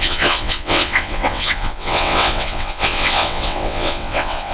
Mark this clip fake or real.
fake